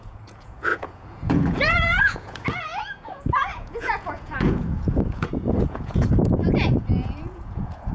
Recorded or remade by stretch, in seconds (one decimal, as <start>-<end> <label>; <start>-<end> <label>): 0.0-7.9 remade